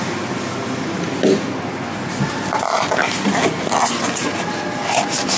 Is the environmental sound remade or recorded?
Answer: recorded